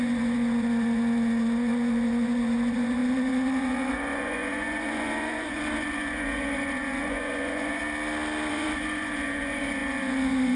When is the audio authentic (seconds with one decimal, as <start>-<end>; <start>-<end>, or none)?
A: 7.8-8.5